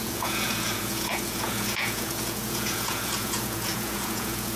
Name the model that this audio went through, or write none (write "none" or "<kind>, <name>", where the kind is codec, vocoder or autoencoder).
vocoder, Vocos